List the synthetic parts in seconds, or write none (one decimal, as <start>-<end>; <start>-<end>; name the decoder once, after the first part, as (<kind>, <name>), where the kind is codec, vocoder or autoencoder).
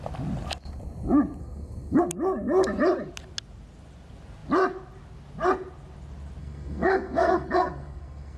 1.4-2.0 (codec, SNAC); 6.4-8.4